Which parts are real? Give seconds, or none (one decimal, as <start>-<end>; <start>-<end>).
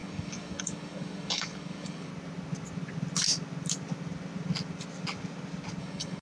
2.1-5.8